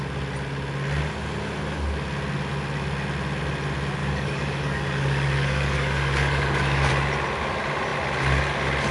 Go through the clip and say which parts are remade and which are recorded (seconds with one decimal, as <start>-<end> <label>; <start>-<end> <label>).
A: 0.0-4.0 recorded; 4.0-6.9 remade; 6.9-8.9 recorded